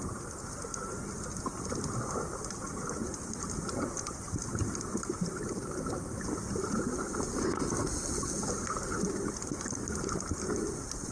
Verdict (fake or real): real